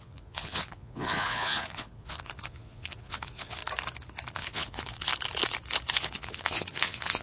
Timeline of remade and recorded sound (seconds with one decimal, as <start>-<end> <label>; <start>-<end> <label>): 0.0-3.6 remade; 3.6-4.3 recorded; 4.3-5.1 remade; 5.1-5.9 recorded; 5.9-7.2 remade